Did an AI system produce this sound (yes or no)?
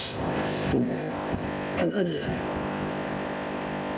yes